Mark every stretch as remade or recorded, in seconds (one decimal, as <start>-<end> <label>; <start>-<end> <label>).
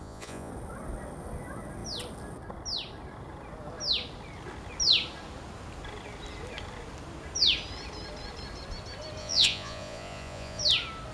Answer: 0.0-0.5 remade; 0.5-9.2 recorded; 9.2-10.6 remade; 10.6-11.1 recorded